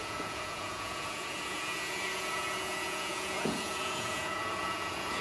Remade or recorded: remade